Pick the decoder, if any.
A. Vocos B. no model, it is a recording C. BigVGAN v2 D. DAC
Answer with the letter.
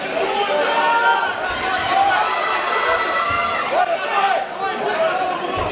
B